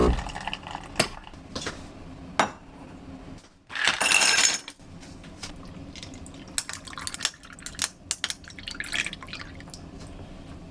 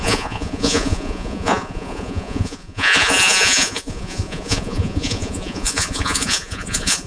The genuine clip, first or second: first